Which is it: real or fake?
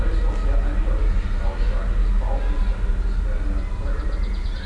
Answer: real